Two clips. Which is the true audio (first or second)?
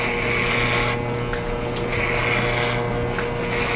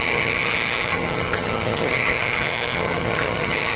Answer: first